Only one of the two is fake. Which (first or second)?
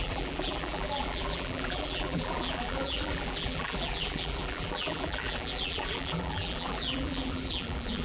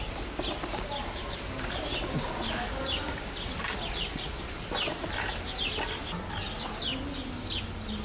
first